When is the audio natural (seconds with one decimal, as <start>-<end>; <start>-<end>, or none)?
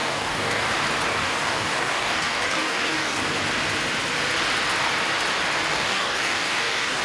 0.7-1.1; 3.2-5.7